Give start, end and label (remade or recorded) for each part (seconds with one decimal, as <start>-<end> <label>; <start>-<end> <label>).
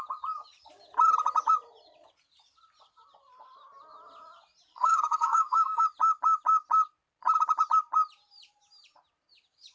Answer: 0.0-4.7 recorded; 4.7-5.8 remade; 5.8-9.7 recorded